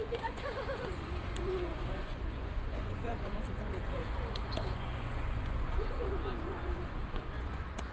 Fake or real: fake